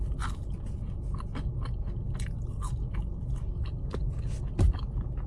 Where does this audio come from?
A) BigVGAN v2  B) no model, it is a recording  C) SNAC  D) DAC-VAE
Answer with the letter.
B